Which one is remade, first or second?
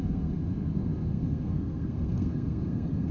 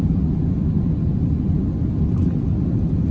first